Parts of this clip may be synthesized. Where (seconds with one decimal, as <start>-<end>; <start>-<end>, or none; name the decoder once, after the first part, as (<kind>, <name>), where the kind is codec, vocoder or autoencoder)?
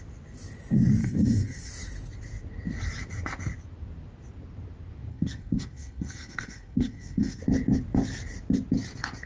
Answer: 1.0-1.7 (codec, SNAC); 5.1-7.4